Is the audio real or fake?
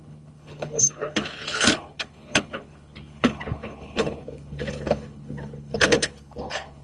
fake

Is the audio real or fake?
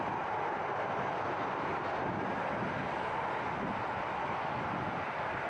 real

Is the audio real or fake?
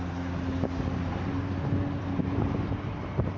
real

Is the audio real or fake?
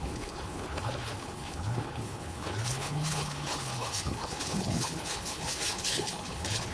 fake